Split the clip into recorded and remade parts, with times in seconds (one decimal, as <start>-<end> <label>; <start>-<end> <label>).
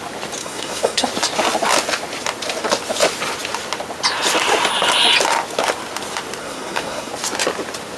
0.0-0.4 recorded; 0.4-1.1 remade; 1.1-6.4 recorded; 6.4-7.1 remade; 7.1-8.0 recorded